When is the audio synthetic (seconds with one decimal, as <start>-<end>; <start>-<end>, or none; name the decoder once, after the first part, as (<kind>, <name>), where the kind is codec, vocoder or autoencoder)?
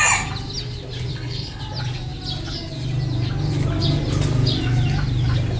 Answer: 1.1-1.6 (codec, HILCodec)